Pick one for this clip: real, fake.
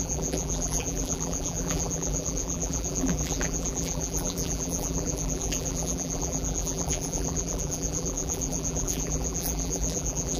fake